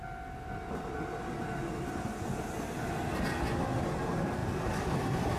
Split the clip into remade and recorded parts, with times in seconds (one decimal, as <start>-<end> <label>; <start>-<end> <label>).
0.0-5.4 recorded